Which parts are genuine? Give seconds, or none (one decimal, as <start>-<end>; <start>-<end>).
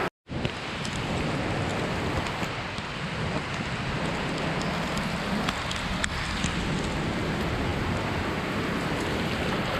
0.0-9.8